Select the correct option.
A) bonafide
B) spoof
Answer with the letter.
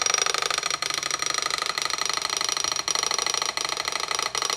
A